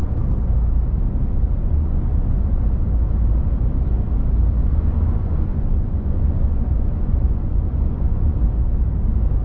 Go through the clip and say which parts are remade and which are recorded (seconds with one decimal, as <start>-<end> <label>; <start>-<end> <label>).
0.0-1.6 recorded; 1.6-2.6 remade; 2.6-4.6 recorded; 4.6-8.4 remade; 8.4-9.4 recorded